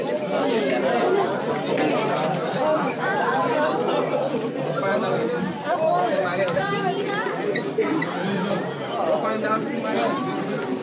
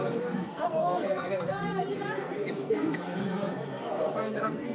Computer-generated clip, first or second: second